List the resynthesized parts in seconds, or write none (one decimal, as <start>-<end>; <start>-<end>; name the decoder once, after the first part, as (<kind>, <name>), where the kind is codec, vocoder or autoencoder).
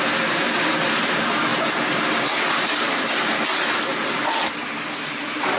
none